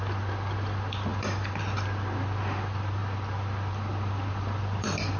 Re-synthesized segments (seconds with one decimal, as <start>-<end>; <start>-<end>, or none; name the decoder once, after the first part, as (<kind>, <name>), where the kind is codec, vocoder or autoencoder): 0.0-3.0 (vocoder, BigVGAN v2); 3.7-5.2